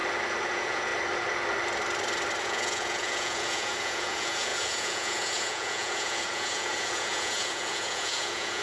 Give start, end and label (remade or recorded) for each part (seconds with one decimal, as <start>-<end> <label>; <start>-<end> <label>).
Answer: 0.0-0.5 recorded; 0.5-0.9 remade; 0.9-2.4 recorded; 2.4-8.6 remade